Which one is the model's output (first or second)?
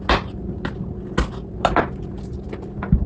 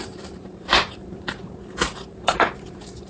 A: second